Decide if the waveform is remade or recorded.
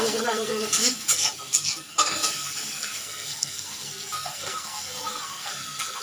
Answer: remade